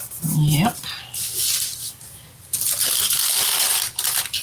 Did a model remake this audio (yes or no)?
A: no